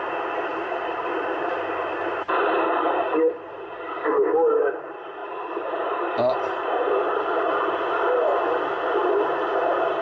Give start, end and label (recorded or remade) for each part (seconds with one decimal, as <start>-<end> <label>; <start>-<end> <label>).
0.0-0.5 recorded; 0.5-1.0 remade; 1.0-2.1 recorded; 2.1-2.8 remade; 2.8-5.2 recorded; 5.2-7.8 remade; 7.8-10.0 recorded